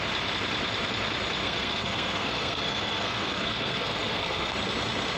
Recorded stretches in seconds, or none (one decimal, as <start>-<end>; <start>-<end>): 0.0-1.4; 4.5-5.2